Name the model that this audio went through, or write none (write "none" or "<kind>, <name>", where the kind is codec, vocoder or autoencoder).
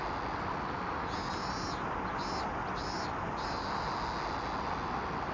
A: none